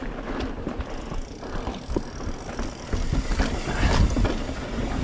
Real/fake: real